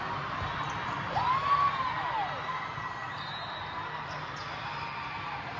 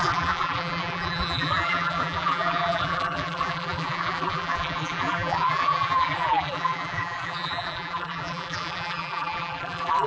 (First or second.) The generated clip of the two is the second